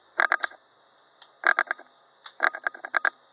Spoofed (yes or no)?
no